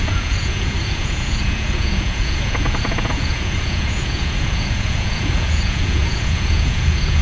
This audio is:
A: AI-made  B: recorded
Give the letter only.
A